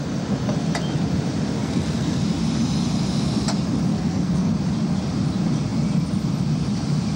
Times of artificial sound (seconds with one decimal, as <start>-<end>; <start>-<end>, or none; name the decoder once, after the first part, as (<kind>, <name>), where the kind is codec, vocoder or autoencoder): 1.6-2.2 (codec, SNAC); 3.9-4.5